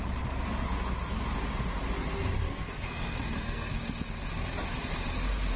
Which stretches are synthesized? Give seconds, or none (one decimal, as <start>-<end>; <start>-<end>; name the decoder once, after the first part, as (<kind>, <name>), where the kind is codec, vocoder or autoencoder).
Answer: 2.5-3.7 (codec, SNAC)